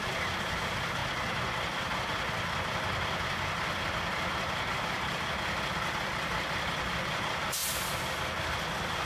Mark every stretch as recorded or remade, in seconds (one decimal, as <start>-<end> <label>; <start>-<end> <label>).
0.0-1.0 remade; 1.0-4.7 recorded; 4.7-7.6 remade; 7.6-8.4 recorded; 8.4-9.1 remade

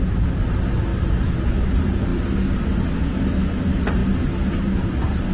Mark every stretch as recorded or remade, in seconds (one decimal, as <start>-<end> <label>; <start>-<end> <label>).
0.0-5.3 recorded

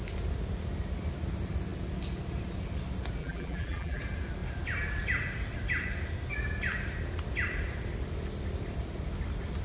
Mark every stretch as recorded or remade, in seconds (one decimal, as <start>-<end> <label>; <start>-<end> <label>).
0.0-3.2 recorded; 3.2-4.0 remade; 4.0-9.6 recorded

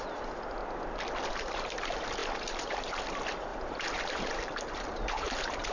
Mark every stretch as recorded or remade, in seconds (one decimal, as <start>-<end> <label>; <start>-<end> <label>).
0.0-0.6 remade; 0.6-1.3 recorded; 1.3-5.7 remade